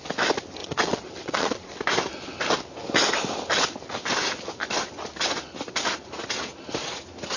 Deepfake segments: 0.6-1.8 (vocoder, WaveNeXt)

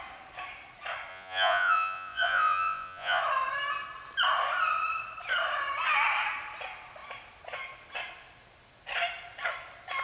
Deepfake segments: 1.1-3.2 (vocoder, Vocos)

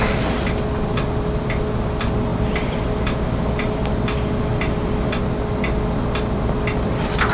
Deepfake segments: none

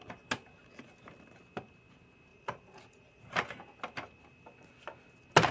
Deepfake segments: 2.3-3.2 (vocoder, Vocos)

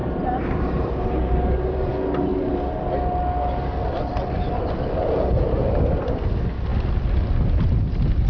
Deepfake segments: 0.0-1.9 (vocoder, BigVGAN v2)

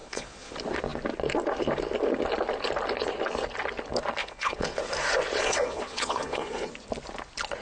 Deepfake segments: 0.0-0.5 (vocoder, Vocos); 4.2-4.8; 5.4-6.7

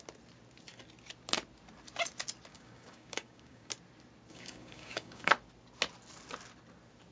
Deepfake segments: 2.5-3.7 (codec, DAC); 4.3-5.3